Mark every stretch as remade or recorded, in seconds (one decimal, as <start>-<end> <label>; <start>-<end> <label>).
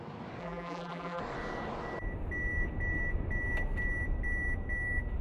0.0-0.4 recorded; 0.4-1.2 remade; 1.2-5.2 recorded